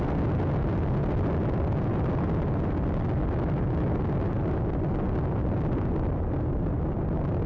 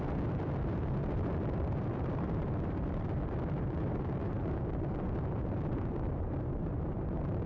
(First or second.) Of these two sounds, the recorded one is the first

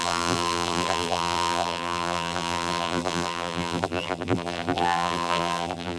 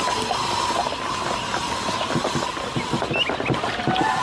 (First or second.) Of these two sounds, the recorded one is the second